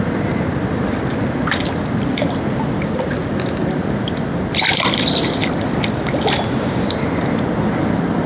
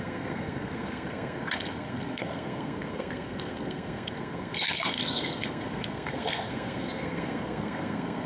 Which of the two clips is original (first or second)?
first